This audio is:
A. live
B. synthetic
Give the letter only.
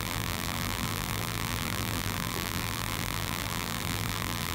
B